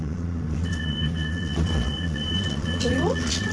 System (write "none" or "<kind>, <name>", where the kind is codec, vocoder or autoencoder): vocoder, Vocos